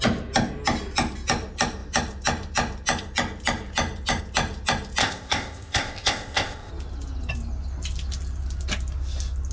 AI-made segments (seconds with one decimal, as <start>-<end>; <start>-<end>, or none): 5.0-6.7